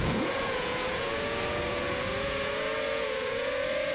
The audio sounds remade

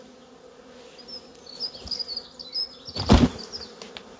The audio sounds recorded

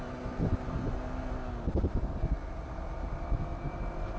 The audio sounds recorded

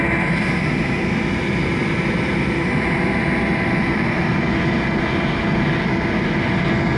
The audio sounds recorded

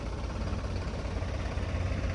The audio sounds recorded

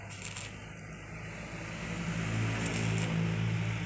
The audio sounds recorded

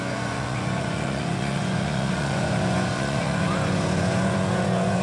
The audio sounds remade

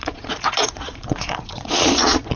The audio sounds remade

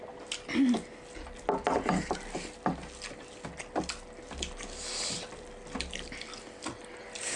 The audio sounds recorded